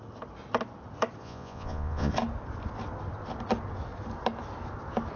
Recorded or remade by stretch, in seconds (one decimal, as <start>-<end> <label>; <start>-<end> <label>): 0.0-1.2 recorded; 1.2-2.1 remade; 2.1-5.2 recorded